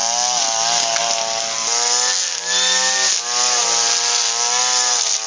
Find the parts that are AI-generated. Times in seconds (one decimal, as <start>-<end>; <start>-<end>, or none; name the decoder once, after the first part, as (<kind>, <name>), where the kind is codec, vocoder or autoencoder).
none

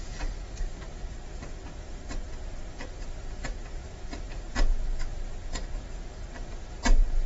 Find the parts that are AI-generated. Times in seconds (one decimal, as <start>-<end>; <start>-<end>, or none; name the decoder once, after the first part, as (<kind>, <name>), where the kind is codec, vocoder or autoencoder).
none

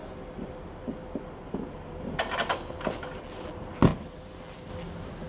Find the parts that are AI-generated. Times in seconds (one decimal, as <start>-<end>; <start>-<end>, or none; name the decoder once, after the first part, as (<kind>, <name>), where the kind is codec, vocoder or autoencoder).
none

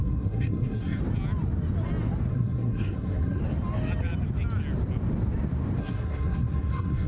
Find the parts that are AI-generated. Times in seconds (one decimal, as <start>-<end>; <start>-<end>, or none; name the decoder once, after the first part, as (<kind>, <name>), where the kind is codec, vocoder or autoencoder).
0.0-1.0 (codec, SNAC); 2.3-3.4; 5.8-7.1

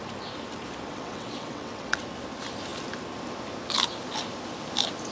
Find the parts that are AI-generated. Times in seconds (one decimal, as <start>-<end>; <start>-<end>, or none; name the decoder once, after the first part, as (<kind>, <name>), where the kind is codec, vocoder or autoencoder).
0.9-2.0 (vocoder, WaveNeXt)

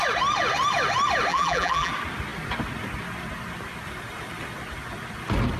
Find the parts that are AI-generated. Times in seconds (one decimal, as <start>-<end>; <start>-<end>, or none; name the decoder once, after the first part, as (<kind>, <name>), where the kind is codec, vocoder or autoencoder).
1.3-1.9 (vocoder, BigVGAN v2)

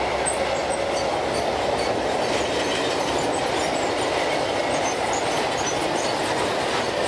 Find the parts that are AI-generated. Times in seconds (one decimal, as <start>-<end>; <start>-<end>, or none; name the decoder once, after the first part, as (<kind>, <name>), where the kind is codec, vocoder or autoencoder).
none

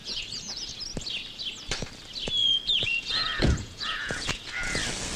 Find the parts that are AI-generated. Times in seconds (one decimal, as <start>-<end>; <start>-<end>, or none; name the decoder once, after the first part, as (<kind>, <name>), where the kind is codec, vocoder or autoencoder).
0.0-0.8 (vocoder, Vocos); 2.4-4.5